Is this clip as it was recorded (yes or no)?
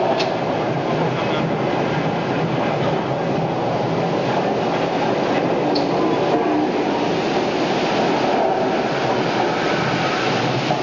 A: yes